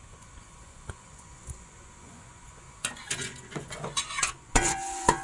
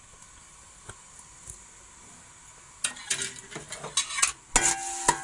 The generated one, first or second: first